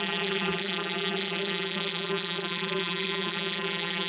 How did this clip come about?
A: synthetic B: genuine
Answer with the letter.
A